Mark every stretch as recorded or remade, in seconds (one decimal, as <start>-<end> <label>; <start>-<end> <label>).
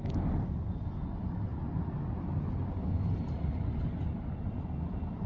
0.0-5.3 recorded